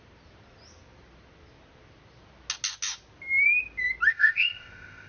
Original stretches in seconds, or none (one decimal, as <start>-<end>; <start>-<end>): 0.0-4.1